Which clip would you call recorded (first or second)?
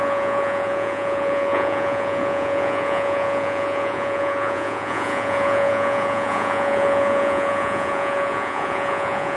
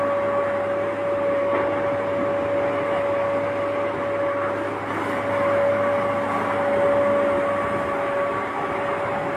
second